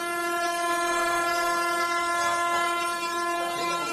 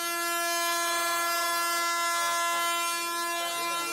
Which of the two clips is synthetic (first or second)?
first